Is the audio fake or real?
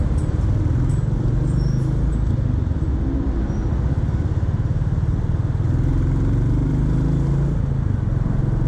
real